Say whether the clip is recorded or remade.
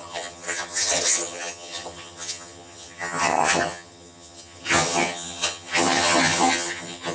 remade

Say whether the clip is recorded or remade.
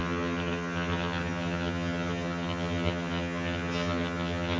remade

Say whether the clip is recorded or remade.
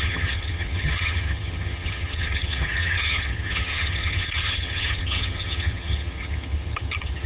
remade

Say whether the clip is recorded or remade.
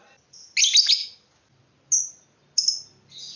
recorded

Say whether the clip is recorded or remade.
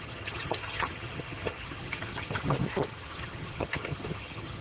remade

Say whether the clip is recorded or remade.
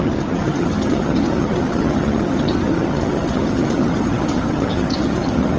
remade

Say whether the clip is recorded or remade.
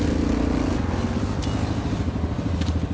recorded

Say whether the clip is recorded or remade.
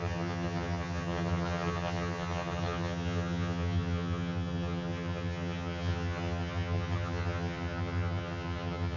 remade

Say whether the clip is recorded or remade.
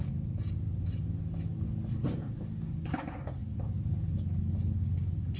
recorded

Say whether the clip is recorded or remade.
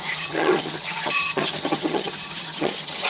remade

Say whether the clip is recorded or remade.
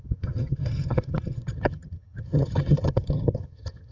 remade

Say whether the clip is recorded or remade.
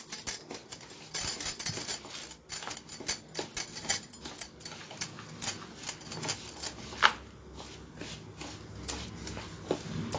recorded